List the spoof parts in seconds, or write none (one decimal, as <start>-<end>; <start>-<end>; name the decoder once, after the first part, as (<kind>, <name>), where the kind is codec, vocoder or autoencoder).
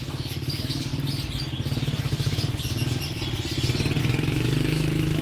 0.0-0.9 (codec, DAC); 4.0-5.2